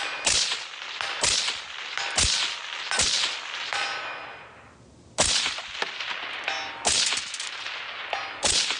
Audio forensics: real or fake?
real